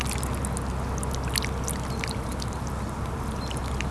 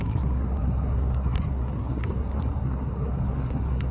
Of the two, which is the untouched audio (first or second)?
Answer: first